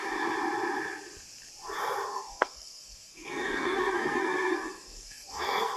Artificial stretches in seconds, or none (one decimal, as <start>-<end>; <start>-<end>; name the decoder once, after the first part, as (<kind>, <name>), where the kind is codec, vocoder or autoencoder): 2.1-5.8 (codec, SNAC)